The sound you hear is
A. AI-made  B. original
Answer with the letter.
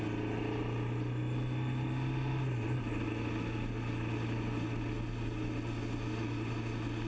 B